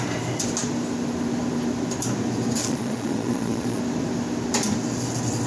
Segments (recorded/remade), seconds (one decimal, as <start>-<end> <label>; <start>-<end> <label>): 0.0-2.6 recorded; 2.6-3.8 remade; 3.8-5.5 recorded